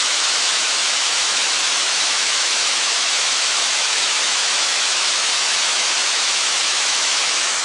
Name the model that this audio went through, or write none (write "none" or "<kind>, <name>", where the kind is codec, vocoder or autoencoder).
autoencoder, DAC-VAE